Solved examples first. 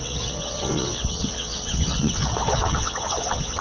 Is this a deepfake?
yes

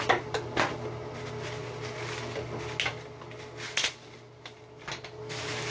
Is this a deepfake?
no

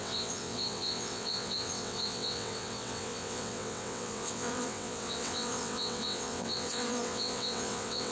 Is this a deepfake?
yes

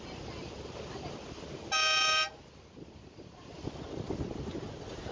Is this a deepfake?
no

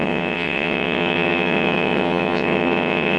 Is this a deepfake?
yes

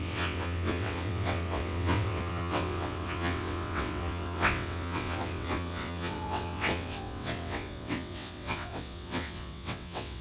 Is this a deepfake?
yes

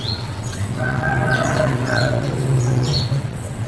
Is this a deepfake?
yes